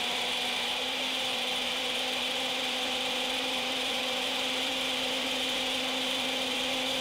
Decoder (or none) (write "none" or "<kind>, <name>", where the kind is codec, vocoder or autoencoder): vocoder, BigVGAN v2